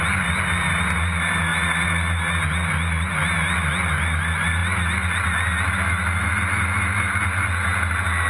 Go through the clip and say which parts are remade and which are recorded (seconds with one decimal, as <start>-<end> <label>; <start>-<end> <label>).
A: 0.0-8.3 recorded